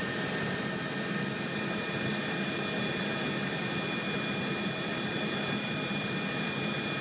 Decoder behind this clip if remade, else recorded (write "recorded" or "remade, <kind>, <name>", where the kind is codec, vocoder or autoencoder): recorded